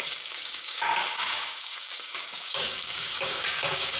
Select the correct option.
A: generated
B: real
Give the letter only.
A